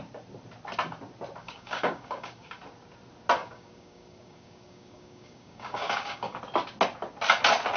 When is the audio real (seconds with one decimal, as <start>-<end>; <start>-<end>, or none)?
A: 0.0-1.4; 2.6-3.4; 6.4-7.8